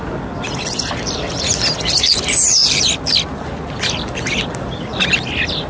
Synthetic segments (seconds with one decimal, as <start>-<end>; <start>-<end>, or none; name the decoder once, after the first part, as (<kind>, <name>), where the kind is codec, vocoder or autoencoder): none

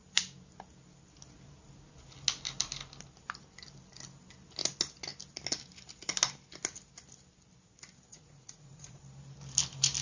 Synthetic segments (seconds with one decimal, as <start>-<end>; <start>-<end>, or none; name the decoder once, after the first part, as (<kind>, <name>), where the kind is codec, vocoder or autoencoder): 8.1-9.0 (vocoder, Vocos)

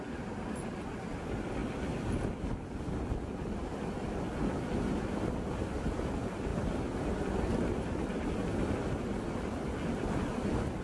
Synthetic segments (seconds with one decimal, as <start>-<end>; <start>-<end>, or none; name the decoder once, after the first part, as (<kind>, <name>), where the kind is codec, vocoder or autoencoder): none

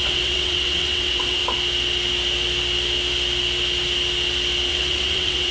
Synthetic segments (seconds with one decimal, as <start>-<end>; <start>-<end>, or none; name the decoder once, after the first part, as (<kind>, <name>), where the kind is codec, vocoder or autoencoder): 0.0-1.4 (vocoder, WaveNeXt); 4.7-5.5